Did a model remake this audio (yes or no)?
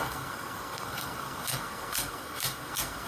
yes